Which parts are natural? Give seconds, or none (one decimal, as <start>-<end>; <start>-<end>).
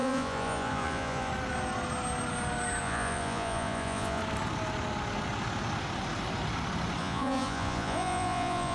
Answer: 1.3-2.8; 4.2-7.0